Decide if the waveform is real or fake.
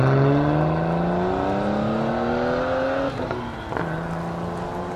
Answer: real